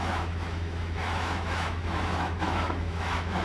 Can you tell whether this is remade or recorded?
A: remade